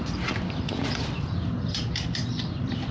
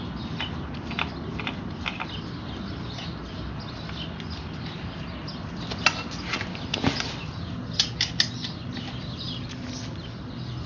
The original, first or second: second